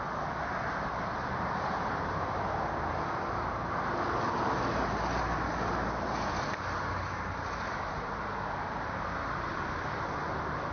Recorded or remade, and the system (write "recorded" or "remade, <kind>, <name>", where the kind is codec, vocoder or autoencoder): recorded